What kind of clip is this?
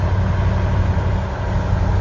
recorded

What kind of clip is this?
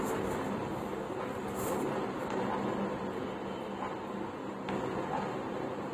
recorded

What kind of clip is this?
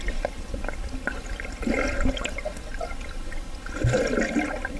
recorded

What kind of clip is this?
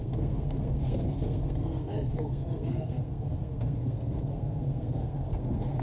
remade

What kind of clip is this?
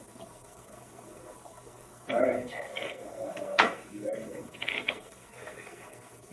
remade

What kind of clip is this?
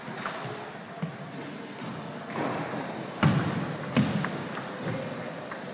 recorded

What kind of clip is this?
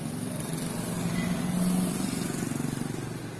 recorded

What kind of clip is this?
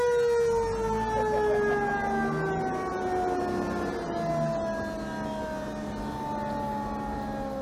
recorded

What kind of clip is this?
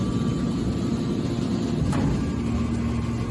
recorded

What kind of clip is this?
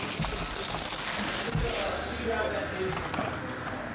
recorded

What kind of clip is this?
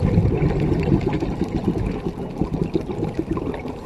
recorded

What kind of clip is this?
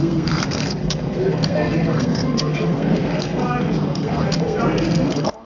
remade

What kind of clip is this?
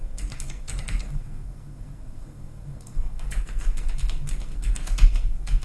remade